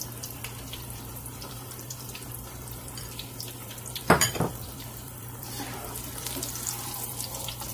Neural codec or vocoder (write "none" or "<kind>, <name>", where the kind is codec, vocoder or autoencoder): vocoder, BigVGAN v2